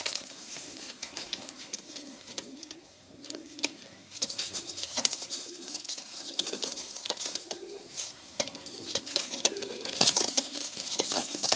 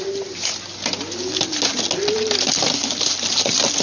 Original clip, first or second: second